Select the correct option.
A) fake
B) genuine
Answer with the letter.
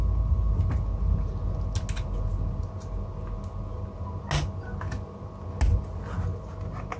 B